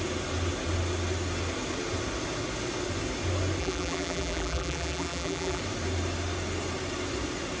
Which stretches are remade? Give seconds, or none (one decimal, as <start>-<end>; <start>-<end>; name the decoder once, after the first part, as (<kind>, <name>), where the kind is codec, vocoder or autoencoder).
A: 3.6-5.6 (vocoder, BigVGAN v2)